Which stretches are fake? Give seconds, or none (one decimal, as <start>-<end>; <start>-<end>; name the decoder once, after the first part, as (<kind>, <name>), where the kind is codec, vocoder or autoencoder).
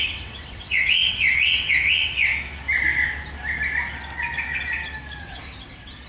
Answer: 0.0-2.3 (vocoder, WaveNeXt); 5.2-6.1